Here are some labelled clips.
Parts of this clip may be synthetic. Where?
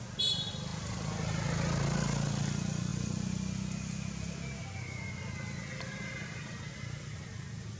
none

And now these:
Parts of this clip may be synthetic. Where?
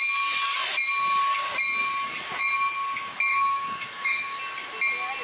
3.3-4.4 (autoencoder, DAC-VAE)